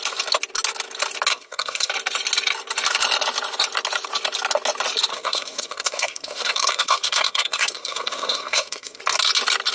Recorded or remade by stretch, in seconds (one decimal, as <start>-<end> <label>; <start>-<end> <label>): 0.0-1.3 recorded; 1.3-1.9 remade; 1.9-5.1 recorded; 5.1-9.0 remade; 9.0-9.7 recorded